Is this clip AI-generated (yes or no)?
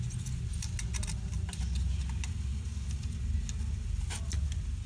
no